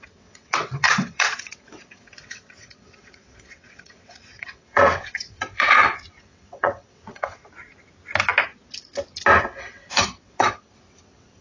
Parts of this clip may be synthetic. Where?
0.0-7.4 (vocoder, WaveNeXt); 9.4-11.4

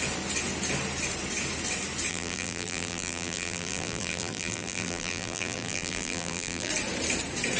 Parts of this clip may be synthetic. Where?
2.1-6.7 (vocoder, BigVGAN v2)

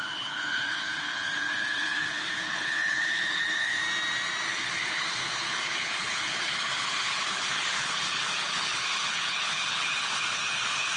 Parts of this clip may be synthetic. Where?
0.0-3.8 (codec, HILCodec); 4.5-11.0

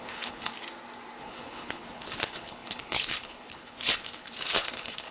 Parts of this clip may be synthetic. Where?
0.0-0.5 (codec, HILCodec); 1.2-5.1

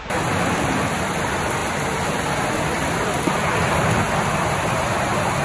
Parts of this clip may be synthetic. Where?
none